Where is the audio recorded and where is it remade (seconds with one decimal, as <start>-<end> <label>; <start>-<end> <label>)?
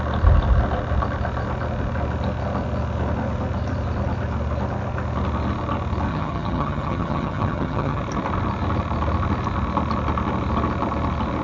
0.0-6.1 recorded; 6.1-8.0 remade; 8.0-11.4 recorded